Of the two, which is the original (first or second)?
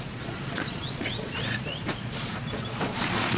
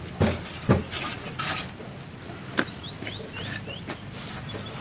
second